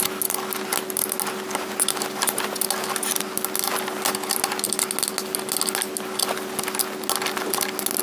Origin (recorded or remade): recorded